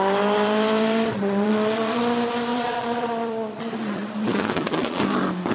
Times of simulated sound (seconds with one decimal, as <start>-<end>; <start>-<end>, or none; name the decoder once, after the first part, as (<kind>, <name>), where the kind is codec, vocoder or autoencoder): 1.1-2.0 (vocoder, Vocos); 2.5-5.0